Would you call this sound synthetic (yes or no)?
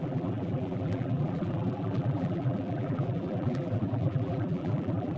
yes